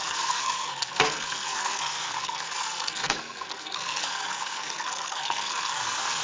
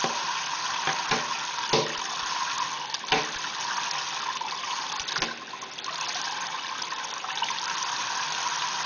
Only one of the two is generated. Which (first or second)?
first